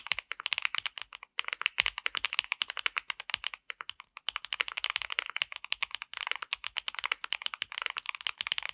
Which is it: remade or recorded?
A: recorded